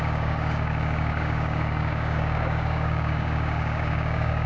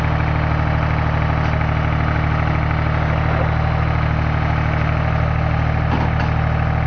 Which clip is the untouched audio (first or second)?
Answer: second